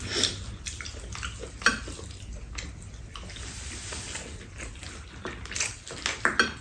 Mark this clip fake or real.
real